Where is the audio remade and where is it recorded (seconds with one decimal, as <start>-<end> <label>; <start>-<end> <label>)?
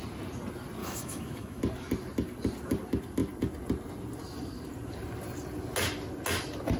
0.0-0.8 recorded; 0.8-1.6 remade; 1.6-6.8 recorded